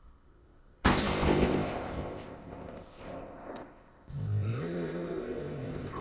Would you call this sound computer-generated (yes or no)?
yes